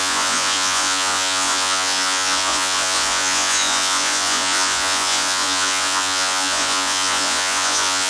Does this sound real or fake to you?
fake